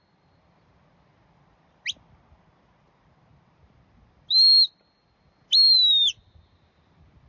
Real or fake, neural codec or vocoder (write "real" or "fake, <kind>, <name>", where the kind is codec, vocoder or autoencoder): real